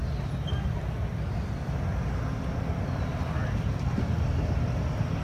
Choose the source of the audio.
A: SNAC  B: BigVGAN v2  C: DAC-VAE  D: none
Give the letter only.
D